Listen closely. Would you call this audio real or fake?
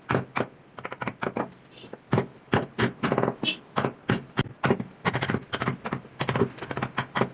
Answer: real